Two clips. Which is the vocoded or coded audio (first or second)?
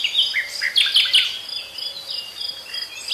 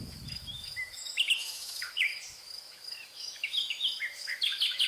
second